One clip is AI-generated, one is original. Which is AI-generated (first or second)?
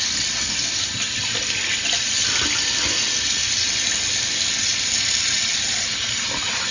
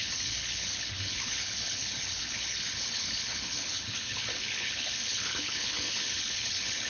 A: second